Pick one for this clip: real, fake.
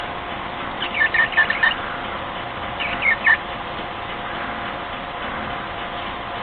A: fake